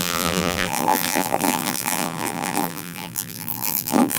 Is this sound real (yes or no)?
no